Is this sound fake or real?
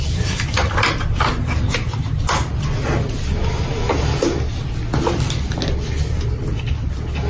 real